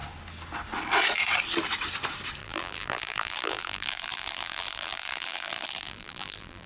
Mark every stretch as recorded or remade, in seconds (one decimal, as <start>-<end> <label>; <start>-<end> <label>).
0.0-2.4 recorded; 2.4-6.7 remade